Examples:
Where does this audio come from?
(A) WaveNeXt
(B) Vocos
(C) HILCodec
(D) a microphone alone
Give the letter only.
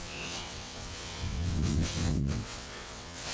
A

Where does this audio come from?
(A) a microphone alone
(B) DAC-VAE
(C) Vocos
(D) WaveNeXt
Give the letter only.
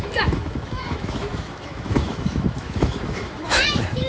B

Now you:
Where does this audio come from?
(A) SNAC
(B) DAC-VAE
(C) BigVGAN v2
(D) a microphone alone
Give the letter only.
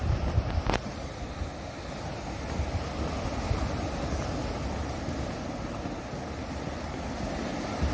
D